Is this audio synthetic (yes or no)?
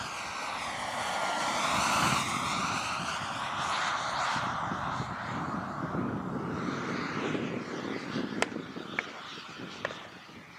no